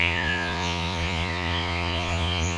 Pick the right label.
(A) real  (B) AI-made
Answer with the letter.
B